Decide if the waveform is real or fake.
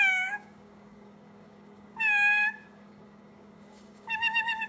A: fake